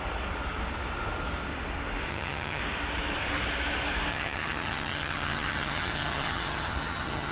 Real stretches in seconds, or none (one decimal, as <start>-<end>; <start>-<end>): 0.0-2.1; 2.6-4.1